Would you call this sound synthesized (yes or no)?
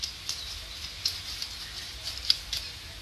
no